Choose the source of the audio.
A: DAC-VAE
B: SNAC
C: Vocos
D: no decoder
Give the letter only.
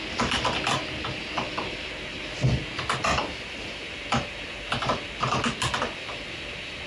D